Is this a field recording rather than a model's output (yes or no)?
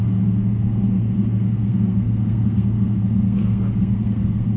no